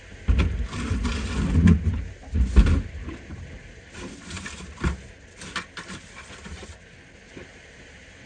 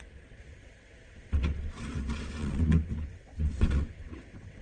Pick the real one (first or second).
first